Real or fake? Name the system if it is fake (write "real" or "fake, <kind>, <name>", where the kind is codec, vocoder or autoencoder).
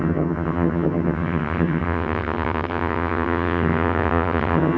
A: fake, vocoder, HiFi-GAN